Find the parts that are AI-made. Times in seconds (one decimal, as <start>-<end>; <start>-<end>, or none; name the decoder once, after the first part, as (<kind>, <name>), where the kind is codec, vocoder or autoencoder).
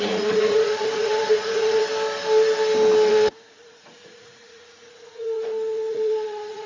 0.0-1.8 (vocoder, Vocos); 3.1-6.7